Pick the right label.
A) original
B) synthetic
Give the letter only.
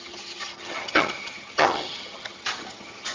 B